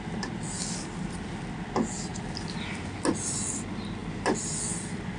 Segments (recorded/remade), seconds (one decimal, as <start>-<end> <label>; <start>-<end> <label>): 0.0-5.2 recorded